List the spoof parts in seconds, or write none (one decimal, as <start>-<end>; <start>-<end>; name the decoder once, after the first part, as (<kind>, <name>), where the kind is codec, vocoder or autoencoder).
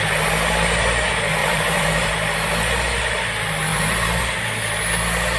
1.4-2.1 (vocoder, BigVGAN v2); 3.7-4.2